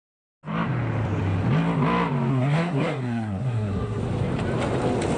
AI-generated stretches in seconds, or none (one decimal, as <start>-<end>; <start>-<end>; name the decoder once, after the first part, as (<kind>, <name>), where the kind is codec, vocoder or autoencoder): 2.3-4.0 (codec, SNAC)